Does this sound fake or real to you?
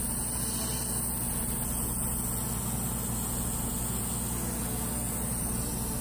real